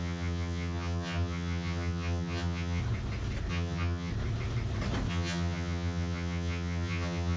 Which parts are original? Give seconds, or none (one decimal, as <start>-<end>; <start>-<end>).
2.8-3.5; 4.1-5.1